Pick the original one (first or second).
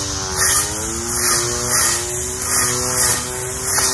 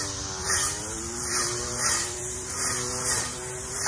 first